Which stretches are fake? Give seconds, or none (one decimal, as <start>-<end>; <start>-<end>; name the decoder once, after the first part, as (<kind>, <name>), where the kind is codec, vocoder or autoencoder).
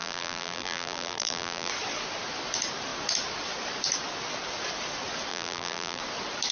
0.0-1.7 (vocoder, BigVGAN v2); 5.3-6.0